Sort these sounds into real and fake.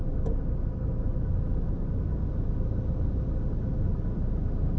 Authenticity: real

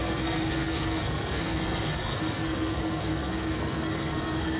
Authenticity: fake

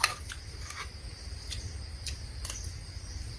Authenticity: real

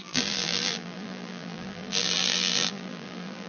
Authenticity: fake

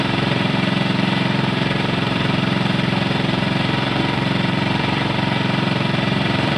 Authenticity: fake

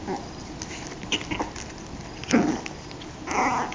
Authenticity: real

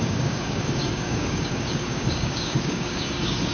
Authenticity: fake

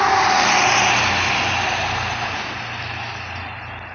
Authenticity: real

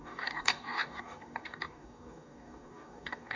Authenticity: fake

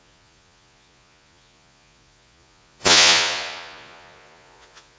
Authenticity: fake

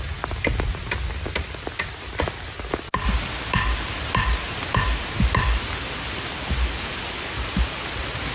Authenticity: real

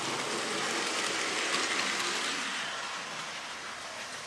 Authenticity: real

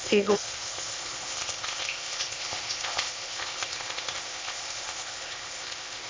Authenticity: fake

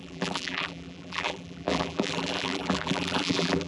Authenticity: fake